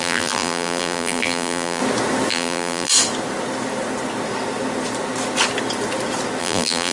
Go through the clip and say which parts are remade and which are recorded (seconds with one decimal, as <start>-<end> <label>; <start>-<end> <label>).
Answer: 0.0-1.8 remade; 1.8-2.3 recorded; 2.3-2.9 remade; 2.9-6.4 recorded; 6.4-6.9 remade

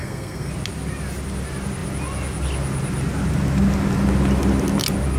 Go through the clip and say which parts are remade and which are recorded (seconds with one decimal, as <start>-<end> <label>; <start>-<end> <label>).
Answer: 0.0-0.5 remade; 0.5-5.2 recorded